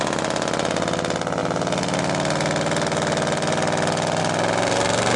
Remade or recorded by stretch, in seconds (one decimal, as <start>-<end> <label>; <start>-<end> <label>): 0.0-5.2 recorded